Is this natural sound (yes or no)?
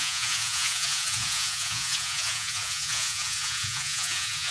no